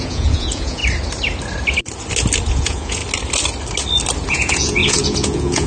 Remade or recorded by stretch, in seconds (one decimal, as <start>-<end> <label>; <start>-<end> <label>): 0.0-0.8 remade; 0.8-2.5 recorded; 2.5-3.0 remade; 3.0-4.3 recorded; 4.3-5.7 remade